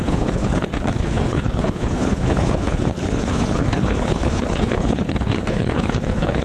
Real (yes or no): no